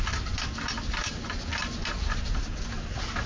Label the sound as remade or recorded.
recorded